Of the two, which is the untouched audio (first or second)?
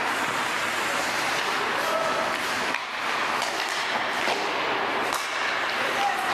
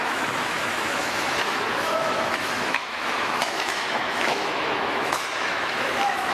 first